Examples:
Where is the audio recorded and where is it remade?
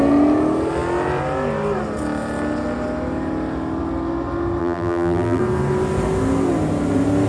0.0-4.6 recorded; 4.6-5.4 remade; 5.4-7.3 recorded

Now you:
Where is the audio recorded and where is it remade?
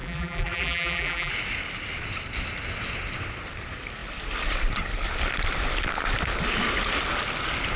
0.0-1.3 remade; 1.3-7.8 recorded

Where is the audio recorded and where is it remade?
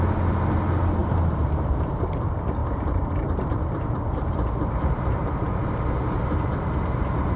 0.0-1.0 recorded; 1.0-1.9 remade; 1.9-2.6 recorded; 2.6-5.8 remade; 5.8-7.4 recorded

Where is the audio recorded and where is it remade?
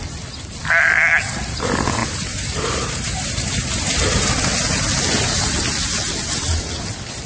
0.0-2.0 recorded; 2.0-4.3 remade; 4.3-7.3 recorded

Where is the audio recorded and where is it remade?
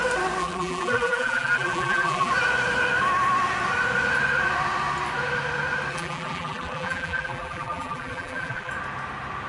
0.0-0.4 recorded; 0.4-2.3 remade; 2.3-5.9 recorded; 5.9-8.7 remade; 8.7-9.5 recorded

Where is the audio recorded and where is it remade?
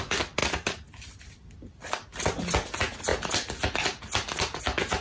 0.0-5.0 recorded